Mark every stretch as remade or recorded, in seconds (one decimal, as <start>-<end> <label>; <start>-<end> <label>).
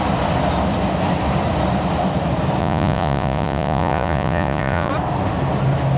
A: 0.0-2.6 recorded; 2.6-4.9 remade; 4.9-6.0 recorded